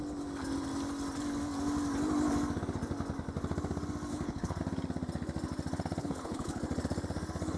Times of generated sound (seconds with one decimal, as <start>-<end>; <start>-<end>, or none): 4.1-4.6; 6.0-6.6